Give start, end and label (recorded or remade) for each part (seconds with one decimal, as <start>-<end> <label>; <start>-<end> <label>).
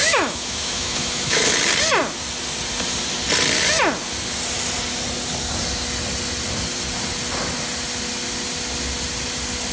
0.0-1.5 remade; 1.5-9.7 recorded